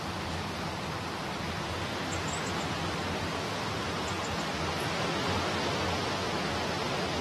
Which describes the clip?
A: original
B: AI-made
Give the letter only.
A